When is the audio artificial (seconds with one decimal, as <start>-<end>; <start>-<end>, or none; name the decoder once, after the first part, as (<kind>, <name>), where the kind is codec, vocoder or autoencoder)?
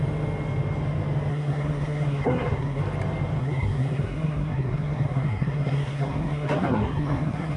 1.3-2.8 (codec, SNAC); 3.4-7.6